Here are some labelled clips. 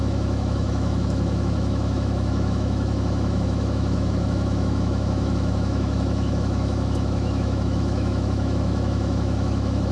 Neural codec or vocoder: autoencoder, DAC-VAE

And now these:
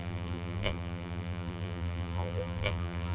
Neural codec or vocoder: vocoder, BigVGAN v2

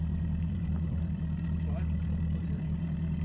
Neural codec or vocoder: vocoder, BigVGAN v2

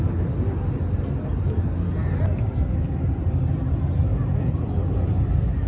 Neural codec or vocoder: none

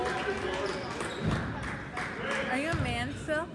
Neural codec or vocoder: none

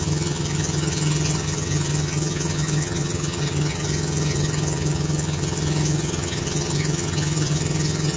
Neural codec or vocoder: vocoder, HiFi-GAN